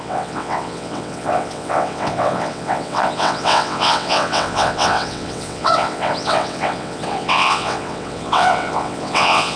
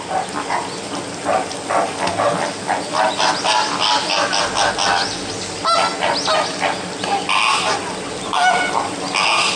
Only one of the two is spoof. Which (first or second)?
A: first